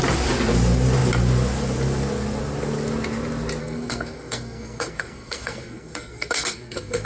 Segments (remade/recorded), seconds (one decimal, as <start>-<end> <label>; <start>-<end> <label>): 0.0-3.6 recorded; 3.6-7.1 remade